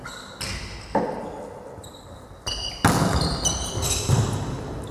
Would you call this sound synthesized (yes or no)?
no